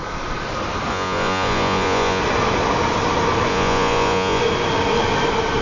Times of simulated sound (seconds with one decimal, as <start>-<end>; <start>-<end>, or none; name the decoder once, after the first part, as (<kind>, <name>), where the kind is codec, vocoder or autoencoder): 0.9-2.2 (vocoder, Vocos); 3.5-4.4